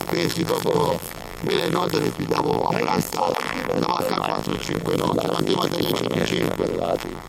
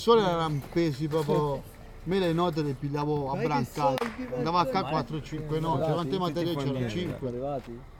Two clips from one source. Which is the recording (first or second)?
second